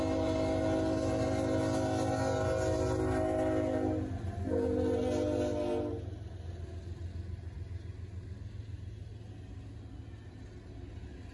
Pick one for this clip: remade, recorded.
recorded